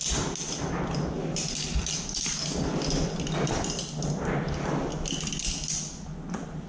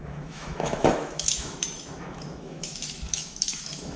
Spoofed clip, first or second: second